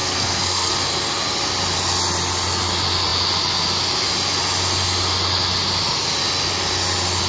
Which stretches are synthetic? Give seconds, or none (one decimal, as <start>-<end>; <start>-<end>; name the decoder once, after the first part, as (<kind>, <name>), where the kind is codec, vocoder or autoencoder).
0.0-0.7 (codec, SNAC)